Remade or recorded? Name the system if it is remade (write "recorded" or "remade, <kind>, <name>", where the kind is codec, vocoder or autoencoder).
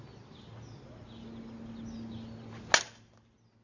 recorded